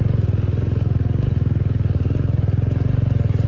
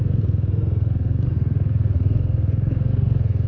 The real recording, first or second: first